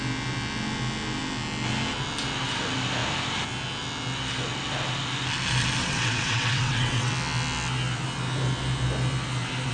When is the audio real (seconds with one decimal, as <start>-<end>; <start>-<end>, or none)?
0.0-5.8; 7.1-9.7